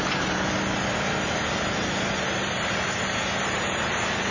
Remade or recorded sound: recorded